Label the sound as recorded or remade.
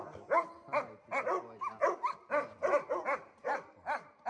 recorded